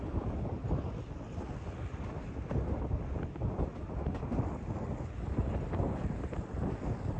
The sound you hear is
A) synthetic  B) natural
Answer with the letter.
B